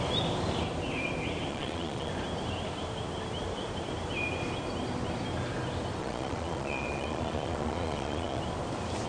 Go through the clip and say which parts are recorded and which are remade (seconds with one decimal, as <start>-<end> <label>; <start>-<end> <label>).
0.0-1.5 recorded; 1.5-2.1 remade; 2.1-6.0 recorded; 6.0-8.4 remade; 8.4-9.1 recorded